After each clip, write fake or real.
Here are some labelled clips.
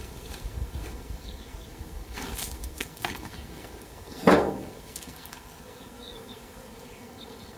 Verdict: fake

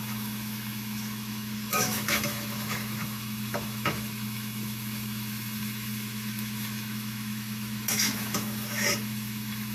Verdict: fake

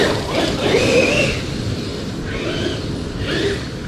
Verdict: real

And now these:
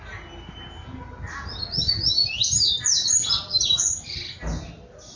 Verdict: real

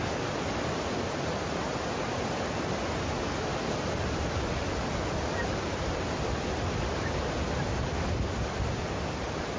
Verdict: real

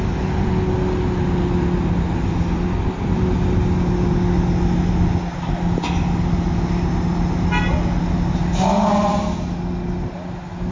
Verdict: real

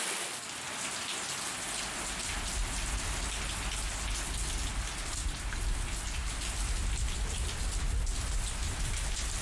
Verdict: real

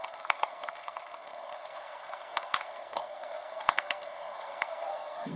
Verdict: fake